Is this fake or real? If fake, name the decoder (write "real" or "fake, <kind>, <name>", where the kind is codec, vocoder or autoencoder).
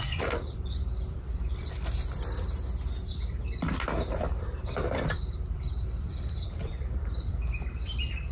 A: fake, vocoder, BigVGAN v2